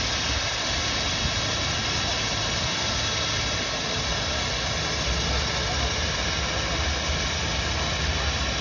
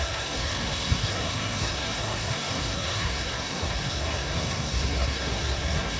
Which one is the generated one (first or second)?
second